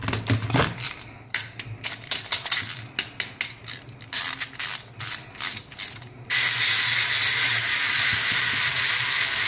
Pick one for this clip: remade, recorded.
recorded